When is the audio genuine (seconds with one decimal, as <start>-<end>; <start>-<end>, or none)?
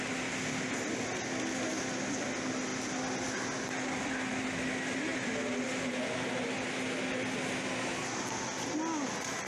0.0-9.5